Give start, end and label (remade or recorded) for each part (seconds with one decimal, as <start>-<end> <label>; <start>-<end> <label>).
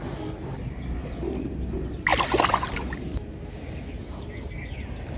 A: 0.0-5.2 recorded